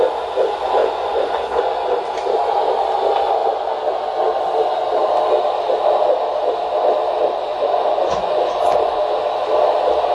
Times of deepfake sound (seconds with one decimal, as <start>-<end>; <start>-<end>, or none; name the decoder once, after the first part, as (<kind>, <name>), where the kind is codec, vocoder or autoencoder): 0.8-1.6 (vocoder, Vocos); 7.5-9.0